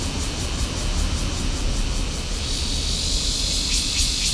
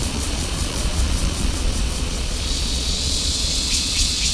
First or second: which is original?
first